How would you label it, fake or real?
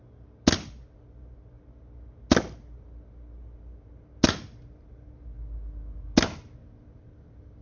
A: real